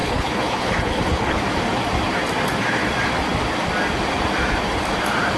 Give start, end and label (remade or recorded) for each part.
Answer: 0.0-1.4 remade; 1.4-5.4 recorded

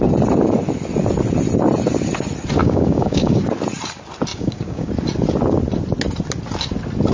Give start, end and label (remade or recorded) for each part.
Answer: 0.0-2.6 recorded; 2.6-3.4 remade; 3.4-4.3 recorded; 4.3-4.9 remade; 4.9-7.1 recorded

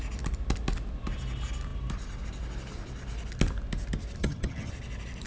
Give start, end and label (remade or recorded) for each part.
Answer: 0.0-4.2 recorded; 4.2-4.7 remade; 4.7-5.3 recorded